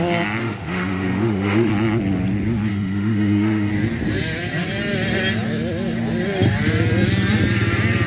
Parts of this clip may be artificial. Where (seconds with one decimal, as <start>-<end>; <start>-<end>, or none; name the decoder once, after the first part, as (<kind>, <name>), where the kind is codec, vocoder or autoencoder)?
0.4-1.7 (autoencoder, DAC-VAE); 2.7-3.7